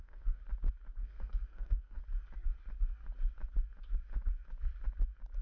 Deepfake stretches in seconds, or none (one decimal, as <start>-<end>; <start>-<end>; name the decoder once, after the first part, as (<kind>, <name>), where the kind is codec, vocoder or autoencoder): 0.0-0.4 (codec, SNAC); 1.0-2.0